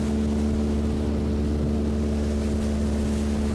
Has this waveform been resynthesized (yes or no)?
no